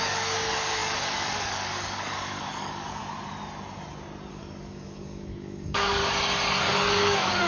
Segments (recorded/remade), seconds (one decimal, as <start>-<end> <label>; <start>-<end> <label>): 0.0-3.0 remade; 3.0-4.3 recorded; 4.3-6.0 remade; 6.0-6.6 recorded; 6.6-7.5 remade